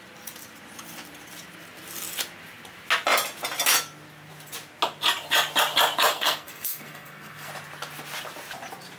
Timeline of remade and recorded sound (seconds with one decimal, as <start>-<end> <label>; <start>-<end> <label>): 0.0-6.1 recorded; 6.1-7.5 remade; 7.5-9.0 recorded